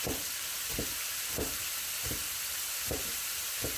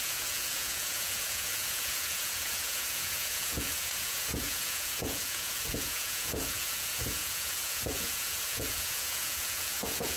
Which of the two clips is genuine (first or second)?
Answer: first